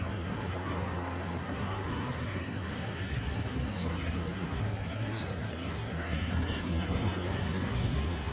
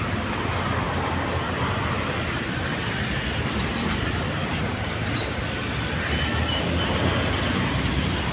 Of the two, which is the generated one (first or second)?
first